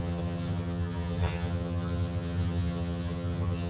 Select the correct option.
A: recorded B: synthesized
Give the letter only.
B